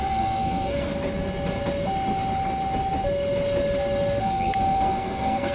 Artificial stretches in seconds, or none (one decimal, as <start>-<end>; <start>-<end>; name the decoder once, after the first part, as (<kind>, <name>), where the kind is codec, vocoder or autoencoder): 0.0-0.9 (codec, SNAC); 4.2-5.5